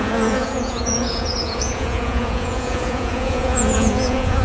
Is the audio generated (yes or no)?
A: yes